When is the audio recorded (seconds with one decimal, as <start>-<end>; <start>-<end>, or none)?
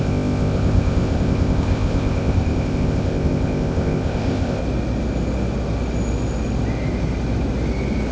4.6-8.1